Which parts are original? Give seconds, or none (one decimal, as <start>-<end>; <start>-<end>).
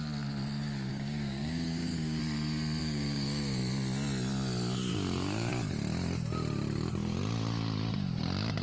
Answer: 0.0-0.9; 2.2-2.8; 3.6-4.9; 5.5-8.6